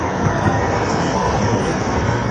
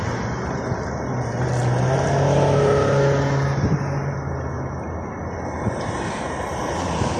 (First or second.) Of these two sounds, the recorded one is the second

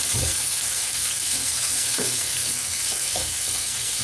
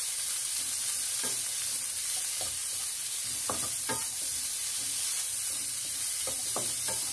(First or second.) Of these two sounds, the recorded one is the second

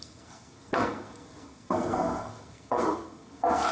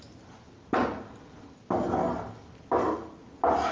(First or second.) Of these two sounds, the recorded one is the second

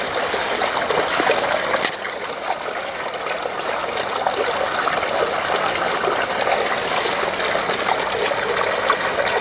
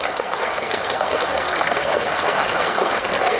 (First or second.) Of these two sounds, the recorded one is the first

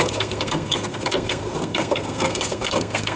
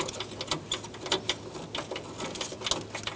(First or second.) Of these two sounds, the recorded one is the second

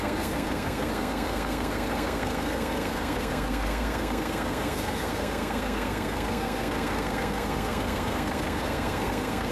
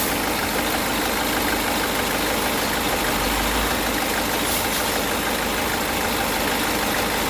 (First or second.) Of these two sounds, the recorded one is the second